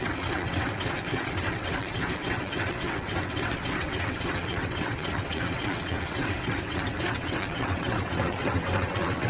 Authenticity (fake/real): fake